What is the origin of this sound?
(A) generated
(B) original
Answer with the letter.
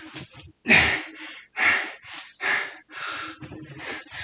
B